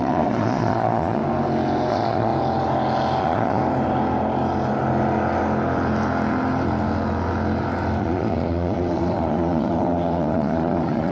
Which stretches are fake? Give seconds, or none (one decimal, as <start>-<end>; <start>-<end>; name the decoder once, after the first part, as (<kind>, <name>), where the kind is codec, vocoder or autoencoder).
0.0-1.2 (vocoder, Vocos); 1.9-2.3; 3.2-3.6; 8.0-11.1